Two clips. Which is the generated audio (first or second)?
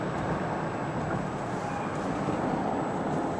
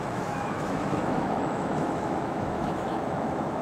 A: second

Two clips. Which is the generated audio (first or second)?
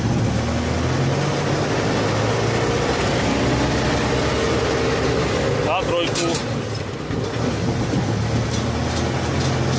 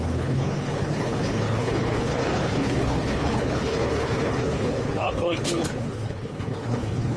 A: second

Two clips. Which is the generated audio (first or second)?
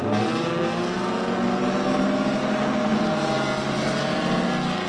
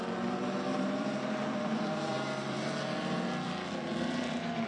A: second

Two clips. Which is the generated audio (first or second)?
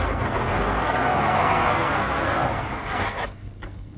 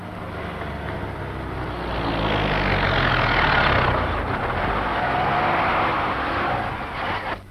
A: first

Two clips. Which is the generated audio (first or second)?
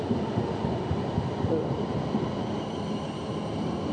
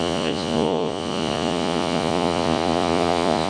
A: second